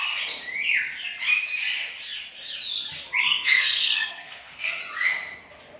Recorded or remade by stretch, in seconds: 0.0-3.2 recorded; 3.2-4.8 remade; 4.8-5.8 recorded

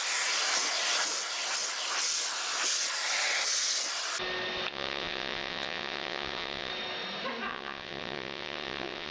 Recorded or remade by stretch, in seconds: 0.0-4.7 recorded; 4.7-6.7 remade; 6.7-7.5 recorded; 7.5-9.1 remade